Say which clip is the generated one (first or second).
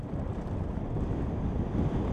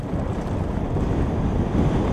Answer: first